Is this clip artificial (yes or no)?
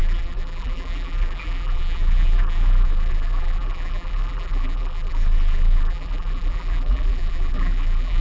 yes